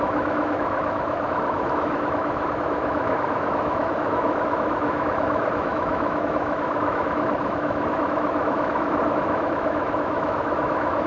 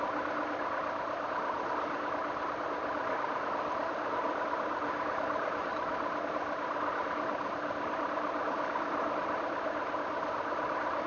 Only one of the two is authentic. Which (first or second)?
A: second